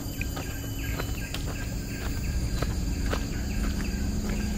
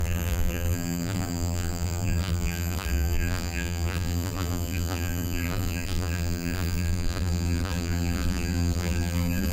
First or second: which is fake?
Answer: second